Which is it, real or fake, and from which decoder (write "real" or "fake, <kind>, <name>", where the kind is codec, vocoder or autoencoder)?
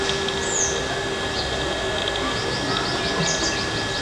real